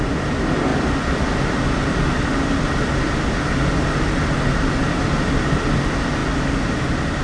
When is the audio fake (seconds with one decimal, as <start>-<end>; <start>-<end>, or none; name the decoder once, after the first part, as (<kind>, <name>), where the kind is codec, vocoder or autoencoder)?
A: none